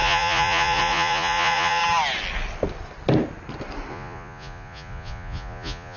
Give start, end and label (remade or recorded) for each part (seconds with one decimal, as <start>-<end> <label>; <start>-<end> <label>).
0.0-1.8 remade; 1.8-3.9 recorded; 3.9-6.0 remade